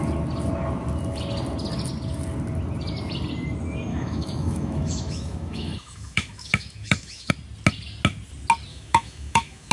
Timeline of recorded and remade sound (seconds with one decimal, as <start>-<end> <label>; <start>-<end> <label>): 0.0-3.9 recorded; 3.9-7.3 remade; 7.3-8.7 recorded; 8.7-9.7 remade